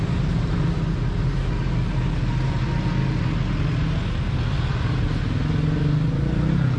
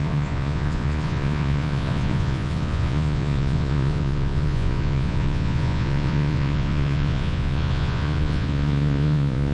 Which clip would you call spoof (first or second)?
second